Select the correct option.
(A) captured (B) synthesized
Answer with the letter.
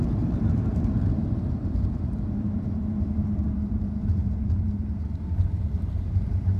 B